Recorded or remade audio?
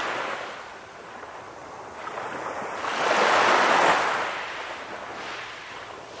recorded